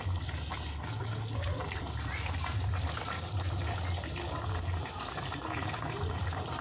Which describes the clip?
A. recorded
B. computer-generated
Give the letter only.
B